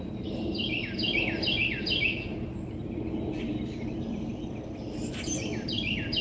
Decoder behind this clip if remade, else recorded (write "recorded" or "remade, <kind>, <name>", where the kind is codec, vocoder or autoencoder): recorded